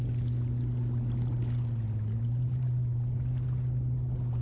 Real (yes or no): yes